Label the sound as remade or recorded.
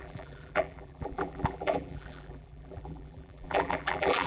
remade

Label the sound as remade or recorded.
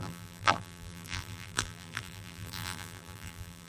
remade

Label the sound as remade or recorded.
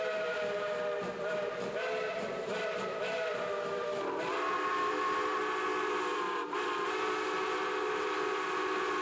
remade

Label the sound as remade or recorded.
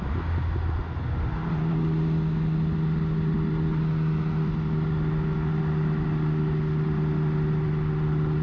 recorded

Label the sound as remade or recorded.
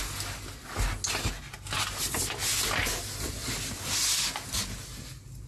recorded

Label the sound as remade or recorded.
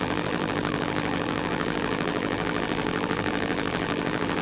remade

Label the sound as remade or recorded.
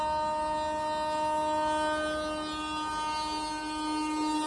recorded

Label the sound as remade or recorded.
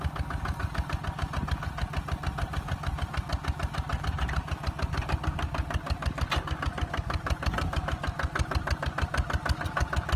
recorded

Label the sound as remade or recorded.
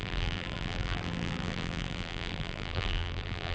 remade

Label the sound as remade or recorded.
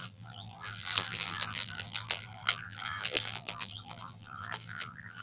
remade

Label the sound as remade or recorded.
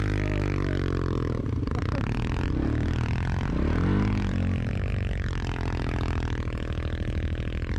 recorded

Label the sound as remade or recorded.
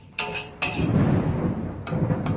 remade